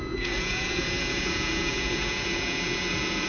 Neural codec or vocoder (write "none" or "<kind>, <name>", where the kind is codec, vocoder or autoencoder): vocoder, Vocos